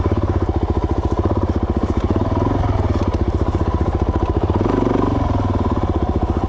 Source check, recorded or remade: recorded